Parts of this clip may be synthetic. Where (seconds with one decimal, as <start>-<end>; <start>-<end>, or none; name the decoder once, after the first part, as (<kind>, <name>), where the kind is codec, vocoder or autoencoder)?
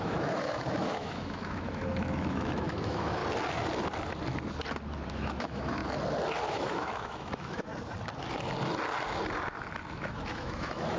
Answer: 0.0-3.2 (autoencoder, DAC-VAE); 5.1-5.8; 6.5-7.7; 9.9-11.0